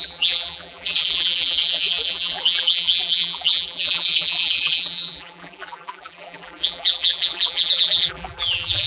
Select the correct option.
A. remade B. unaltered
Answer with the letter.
A